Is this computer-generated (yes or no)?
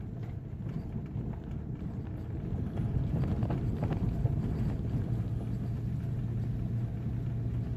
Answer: no